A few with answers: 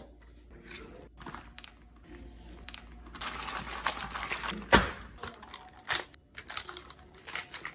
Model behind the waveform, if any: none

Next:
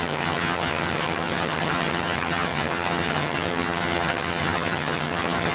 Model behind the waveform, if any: vocoder, HiFi-GAN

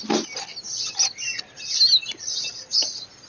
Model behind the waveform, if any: none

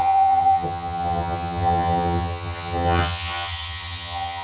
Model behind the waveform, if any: vocoder, HiFi-GAN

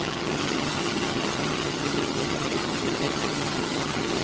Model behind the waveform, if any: vocoder, HiFi-GAN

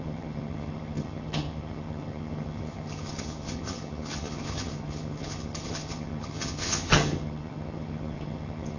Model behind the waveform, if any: vocoder, HiFi-GAN